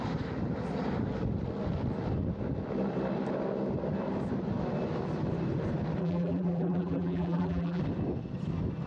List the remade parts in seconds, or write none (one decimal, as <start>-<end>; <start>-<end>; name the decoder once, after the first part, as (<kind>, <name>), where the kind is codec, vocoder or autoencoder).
6.0-7.8 (vocoder, BigVGAN v2)